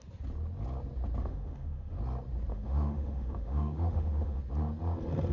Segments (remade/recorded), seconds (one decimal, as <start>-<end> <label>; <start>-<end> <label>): 0.0-1.2 recorded; 1.2-2.0 remade; 2.0-2.5 recorded; 2.5-4.4 remade; 4.4-5.3 recorded